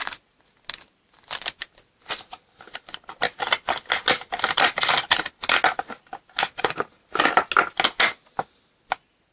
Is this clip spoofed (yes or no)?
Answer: no